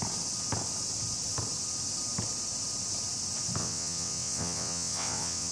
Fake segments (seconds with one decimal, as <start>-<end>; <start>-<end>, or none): 3.6-5.5